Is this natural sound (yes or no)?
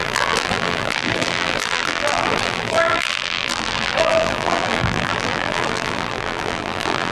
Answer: no